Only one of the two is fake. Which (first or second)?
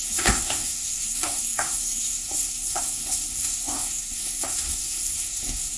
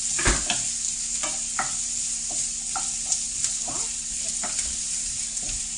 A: first